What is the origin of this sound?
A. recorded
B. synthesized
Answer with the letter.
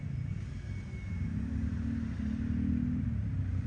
A